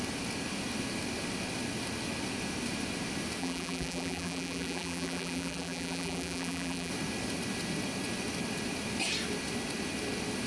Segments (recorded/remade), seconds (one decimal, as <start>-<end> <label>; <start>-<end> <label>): 0.0-3.4 recorded; 3.4-6.9 remade; 6.9-10.5 recorded